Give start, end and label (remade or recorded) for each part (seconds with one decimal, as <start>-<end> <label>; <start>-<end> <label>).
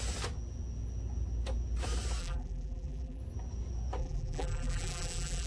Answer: 0.0-2.2 recorded; 2.2-3.2 remade; 3.2-4.0 recorded; 4.0-5.5 remade